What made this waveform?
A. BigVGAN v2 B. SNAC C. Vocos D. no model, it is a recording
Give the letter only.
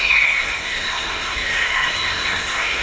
B